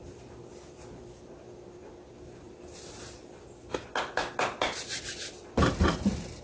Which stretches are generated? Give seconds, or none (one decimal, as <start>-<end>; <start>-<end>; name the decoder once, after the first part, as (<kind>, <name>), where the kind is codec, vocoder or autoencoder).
0.0-1.8 (vocoder, BigVGAN v2); 5.3-6.4